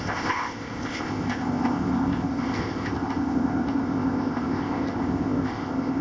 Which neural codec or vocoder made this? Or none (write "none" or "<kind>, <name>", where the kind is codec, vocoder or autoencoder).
codec, ZipCodec